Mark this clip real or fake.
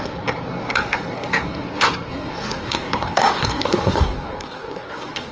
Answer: fake